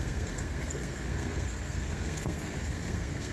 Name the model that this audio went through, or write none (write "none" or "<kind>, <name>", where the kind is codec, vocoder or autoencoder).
codec, SNAC